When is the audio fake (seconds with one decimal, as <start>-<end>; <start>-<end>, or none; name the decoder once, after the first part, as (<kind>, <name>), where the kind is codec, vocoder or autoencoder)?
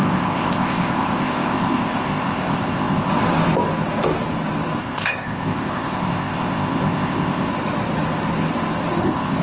0.0-3.1 (codec, ZipCodec); 4.8-7.5; 9.0-9.4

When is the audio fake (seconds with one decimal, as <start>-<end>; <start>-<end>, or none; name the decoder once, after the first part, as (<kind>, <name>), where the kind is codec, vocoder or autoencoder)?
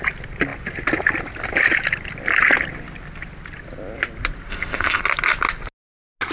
4.5-5.0 (codec, ZipCodec)